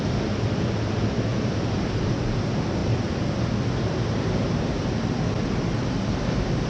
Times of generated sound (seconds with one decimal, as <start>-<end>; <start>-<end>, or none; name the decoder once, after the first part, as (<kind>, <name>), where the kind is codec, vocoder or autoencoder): none